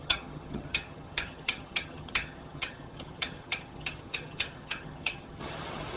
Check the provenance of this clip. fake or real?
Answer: fake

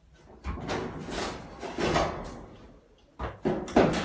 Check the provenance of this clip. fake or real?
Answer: real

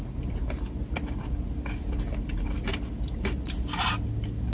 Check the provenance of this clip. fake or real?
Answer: real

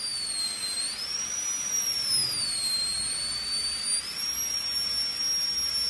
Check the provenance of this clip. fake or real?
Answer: real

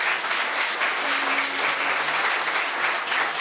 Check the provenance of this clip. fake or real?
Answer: real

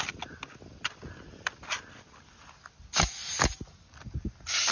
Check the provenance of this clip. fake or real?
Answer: real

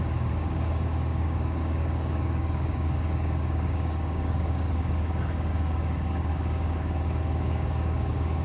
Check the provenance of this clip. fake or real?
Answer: fake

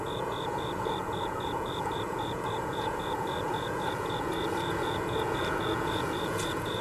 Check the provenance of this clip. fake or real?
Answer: fake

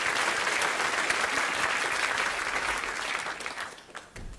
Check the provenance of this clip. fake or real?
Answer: real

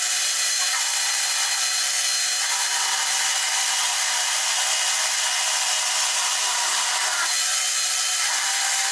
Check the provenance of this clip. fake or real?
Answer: real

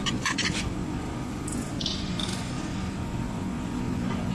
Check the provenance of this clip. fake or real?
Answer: fake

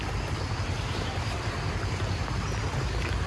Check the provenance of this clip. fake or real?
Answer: real